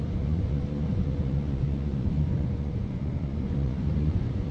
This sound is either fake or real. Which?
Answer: fake